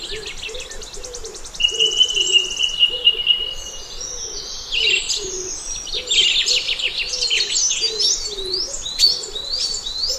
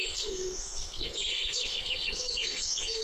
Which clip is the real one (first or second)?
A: first